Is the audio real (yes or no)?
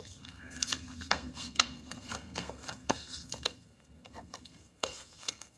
no